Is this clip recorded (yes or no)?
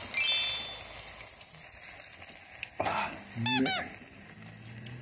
yes